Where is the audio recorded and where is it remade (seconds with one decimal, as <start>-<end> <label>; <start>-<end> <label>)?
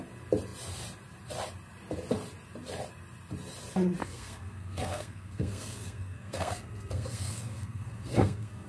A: 0.0-4.0 recorded; 4.0-8.7 remade